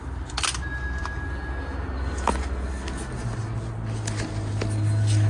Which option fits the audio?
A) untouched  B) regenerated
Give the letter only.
A